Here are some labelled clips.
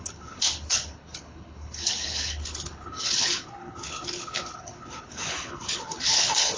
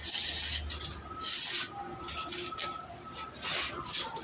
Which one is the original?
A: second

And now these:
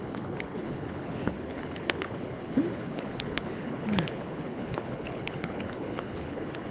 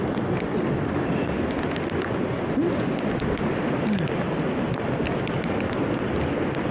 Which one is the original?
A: second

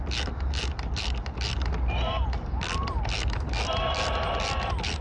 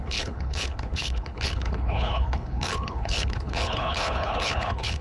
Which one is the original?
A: first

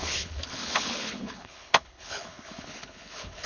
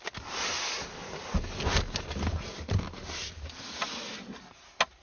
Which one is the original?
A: second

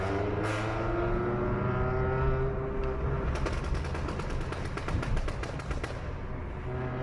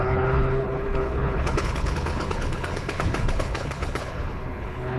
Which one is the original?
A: first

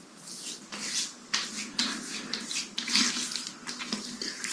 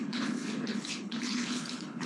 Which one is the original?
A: first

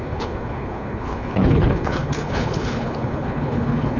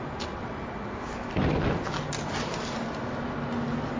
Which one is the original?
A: second